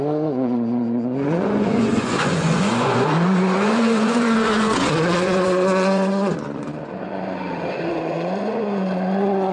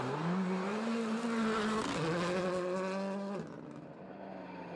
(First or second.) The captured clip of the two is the second